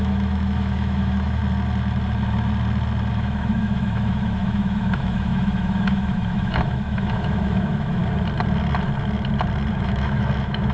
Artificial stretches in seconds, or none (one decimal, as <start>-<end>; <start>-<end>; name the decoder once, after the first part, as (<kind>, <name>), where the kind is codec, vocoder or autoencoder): 0.0-1.4 (autoencoder, DAC-VAE); 3.1-8.0; 9.7-10.7